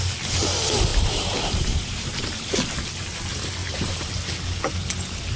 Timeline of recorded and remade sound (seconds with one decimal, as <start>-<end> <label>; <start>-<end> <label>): 0.0-0.9 recorded; 0.9-2.5 remade; 2.5-3.6 recorded; 3.6-4.1 remade; 4.1-5.4 recorded